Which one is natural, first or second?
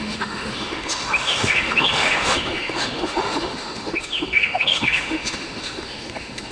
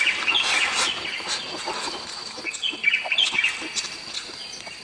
second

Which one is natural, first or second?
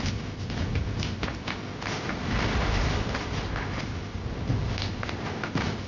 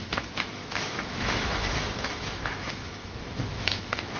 first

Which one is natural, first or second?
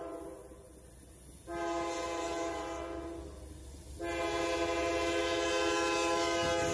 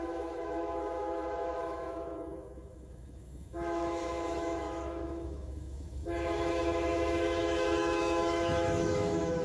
first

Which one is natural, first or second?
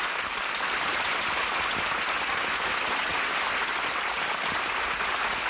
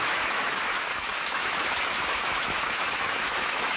first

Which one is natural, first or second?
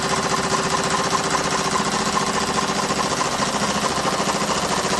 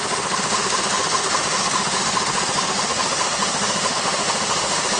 first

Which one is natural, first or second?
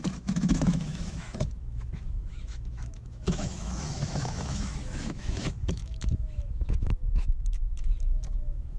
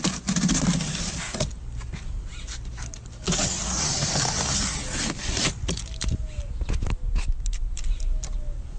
second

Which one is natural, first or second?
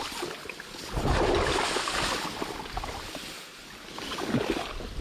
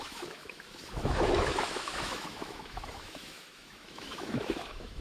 first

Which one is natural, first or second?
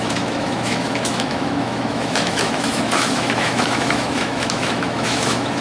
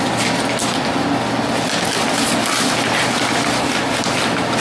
second